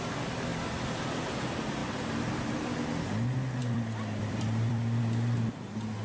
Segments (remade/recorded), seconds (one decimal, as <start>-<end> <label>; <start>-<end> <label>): 0.0-1.8 recorded; 1.8-2.6 remade; 2.6-3.6 recorded; 3.6-5.0 remade; 5.0-6.0 recorded